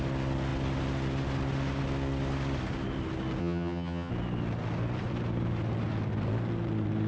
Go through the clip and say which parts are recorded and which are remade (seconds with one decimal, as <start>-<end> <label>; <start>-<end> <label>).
0.0-3.4 recorded; 3.4-4.1 remade; 4.1-7.1 recorded